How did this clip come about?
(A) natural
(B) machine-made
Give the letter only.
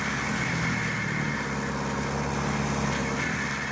A